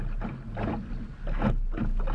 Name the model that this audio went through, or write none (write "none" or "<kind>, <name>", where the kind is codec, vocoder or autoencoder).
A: none